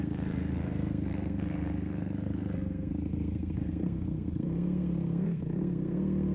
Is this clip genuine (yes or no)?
no